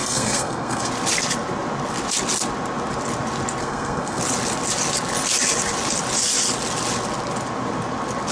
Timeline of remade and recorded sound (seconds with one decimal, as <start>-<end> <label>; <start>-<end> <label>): 0.0-0.9 remade; 0.9-3.6 recorded; 3.6-4.2 remade; 4.2-8.3 recorded